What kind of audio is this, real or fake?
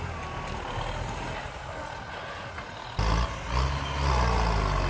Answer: real